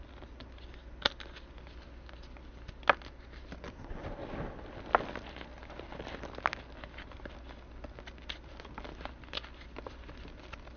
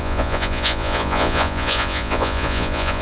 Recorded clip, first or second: first